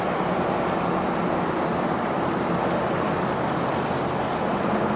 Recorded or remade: recorded